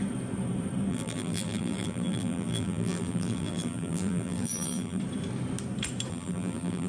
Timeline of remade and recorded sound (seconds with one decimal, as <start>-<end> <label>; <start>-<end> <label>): 0.0-0.9 recorded; 0.9-5.0 remade; 5.0-6.1 recorded; 6.1-6.9 remade